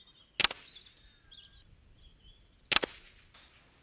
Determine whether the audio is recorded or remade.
recorded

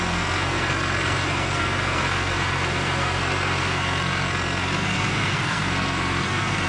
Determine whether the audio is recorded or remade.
remade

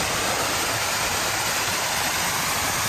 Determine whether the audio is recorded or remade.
recorded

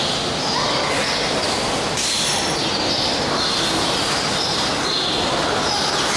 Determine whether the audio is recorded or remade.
recorded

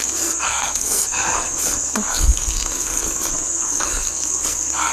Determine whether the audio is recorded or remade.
remade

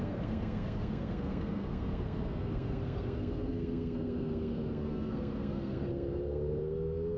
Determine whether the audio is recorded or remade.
remade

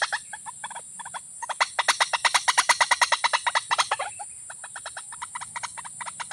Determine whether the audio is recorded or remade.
recorded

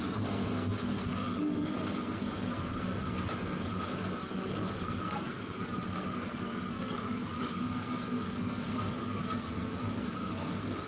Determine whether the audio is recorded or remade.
remade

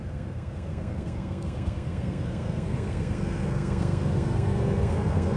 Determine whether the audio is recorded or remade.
remade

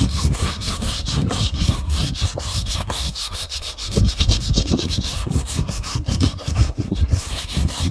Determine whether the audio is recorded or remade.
remade